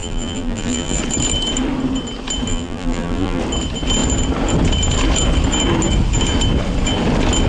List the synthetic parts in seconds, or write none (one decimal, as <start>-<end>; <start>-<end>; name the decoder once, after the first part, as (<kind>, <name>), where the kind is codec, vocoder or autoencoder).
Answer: 0.0-1.0 (vocoder, BigVGAN v2); 2.5-3.4